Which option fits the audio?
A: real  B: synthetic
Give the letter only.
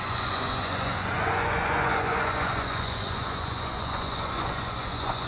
B